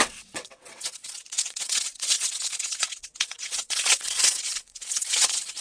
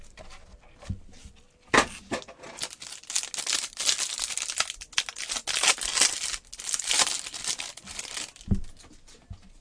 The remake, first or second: first